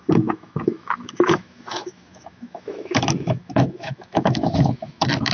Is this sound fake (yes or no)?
yes